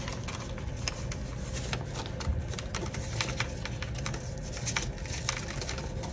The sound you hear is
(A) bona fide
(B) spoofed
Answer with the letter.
A